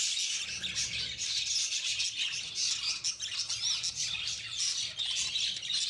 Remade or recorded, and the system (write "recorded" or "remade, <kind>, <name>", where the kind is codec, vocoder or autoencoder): recorded